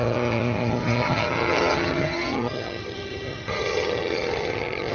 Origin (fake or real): fake